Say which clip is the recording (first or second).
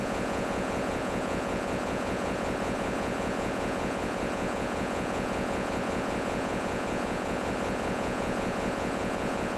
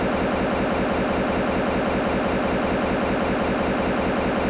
second